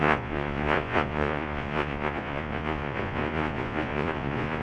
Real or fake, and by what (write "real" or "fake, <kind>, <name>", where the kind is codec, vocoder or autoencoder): fake, vocoder, Vocos